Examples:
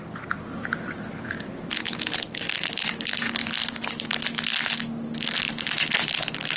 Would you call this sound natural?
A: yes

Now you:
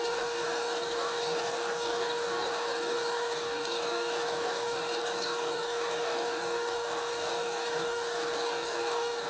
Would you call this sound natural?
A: no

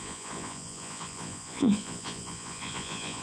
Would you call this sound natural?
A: no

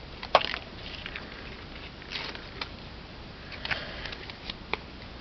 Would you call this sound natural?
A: yes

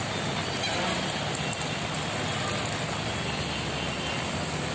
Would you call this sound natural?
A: yes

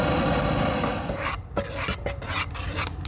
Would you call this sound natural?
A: yes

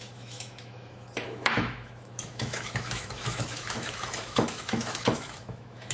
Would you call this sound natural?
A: no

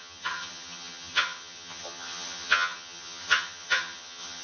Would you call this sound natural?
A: no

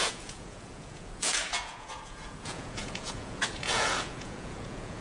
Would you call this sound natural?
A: no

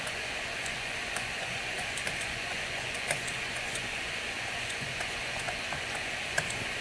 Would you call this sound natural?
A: no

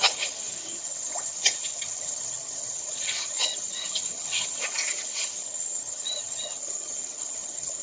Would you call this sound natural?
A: no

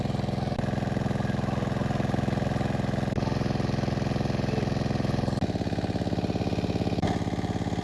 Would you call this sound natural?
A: yes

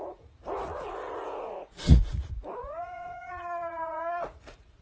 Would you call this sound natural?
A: no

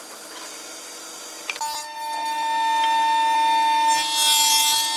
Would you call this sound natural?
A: yes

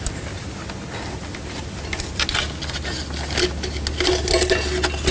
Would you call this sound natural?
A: yes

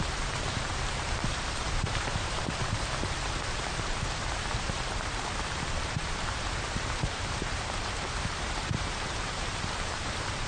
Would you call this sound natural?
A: no